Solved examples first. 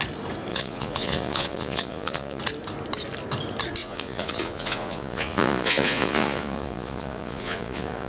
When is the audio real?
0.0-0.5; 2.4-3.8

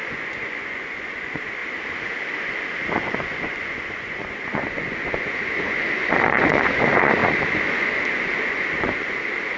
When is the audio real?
1.6-2.4

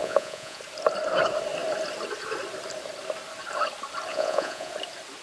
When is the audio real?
0.6-4.1; 4.7-5.2

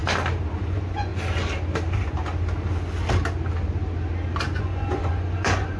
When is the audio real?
0.0-0.6; 1.1-4.6